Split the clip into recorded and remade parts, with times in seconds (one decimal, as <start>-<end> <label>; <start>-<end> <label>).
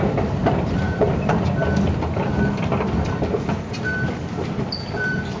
0.0-0.4 recorded; 0.4-1.5 remade; 1.5-5.4 recorded